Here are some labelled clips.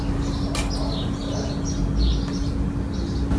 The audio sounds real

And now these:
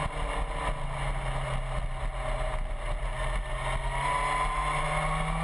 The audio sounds real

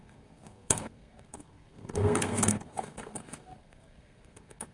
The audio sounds fake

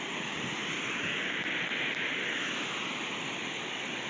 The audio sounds real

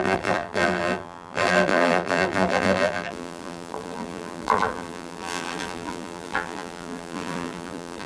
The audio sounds fake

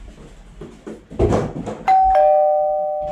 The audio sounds real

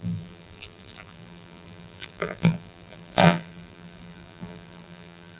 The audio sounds fake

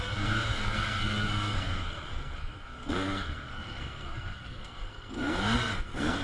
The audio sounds fake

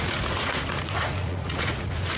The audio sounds fake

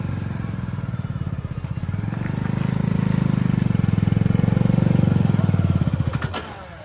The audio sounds real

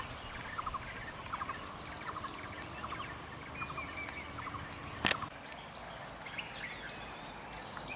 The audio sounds real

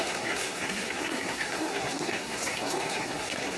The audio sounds fake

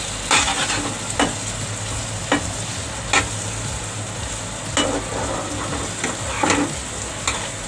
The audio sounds real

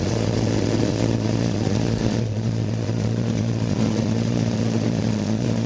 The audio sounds fake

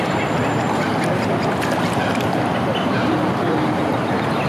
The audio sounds real